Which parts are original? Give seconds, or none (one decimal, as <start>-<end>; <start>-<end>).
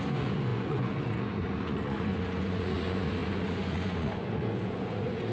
none